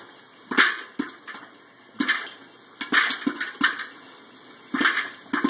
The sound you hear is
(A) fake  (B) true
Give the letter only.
B